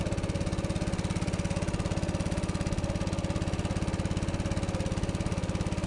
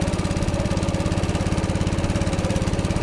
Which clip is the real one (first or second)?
first